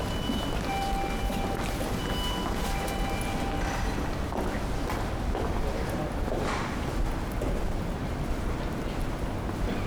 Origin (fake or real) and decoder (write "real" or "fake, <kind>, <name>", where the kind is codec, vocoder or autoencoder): real